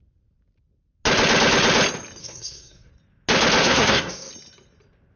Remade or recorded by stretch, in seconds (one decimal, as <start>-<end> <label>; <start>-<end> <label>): 0.0-2.2 recorded; 2.2-2.9 remade; 2.9-3.6 recorded; 3.6-4.3 remade; 4.3-5.2 recorded

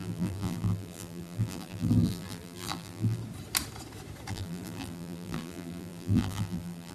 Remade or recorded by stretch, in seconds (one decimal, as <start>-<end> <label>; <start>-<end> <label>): 0.0-3.2 remade; 3.2-4.3 recorded; 4.3-6.9 remade